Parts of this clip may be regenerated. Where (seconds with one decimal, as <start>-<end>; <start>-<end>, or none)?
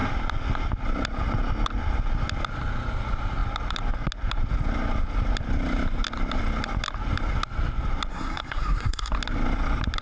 8.1-9.1